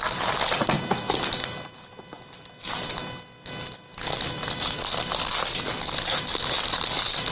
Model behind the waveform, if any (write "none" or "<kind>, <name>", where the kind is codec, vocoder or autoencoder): none